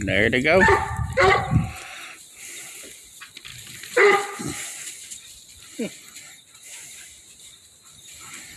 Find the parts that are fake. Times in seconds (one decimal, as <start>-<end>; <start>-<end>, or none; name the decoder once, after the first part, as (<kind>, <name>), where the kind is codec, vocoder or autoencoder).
none